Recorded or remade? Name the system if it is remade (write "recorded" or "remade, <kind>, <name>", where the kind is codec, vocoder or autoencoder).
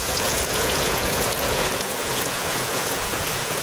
remade, vocoder, Vocos